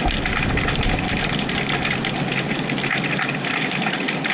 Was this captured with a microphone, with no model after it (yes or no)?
yes